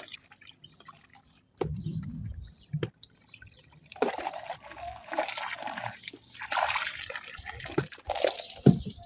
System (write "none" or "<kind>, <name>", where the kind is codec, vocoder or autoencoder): none